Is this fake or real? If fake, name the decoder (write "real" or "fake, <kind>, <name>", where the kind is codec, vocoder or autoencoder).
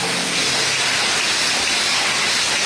real